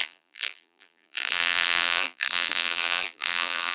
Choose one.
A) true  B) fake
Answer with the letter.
B